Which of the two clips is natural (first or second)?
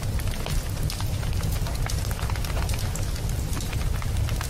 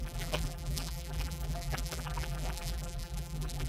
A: first